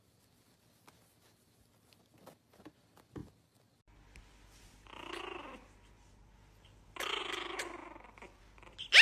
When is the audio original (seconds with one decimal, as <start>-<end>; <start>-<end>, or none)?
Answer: 0.0-9.0